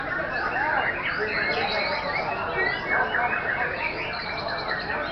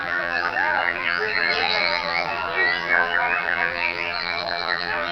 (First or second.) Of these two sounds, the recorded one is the first